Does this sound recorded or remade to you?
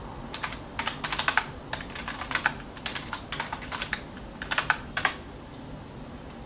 recorded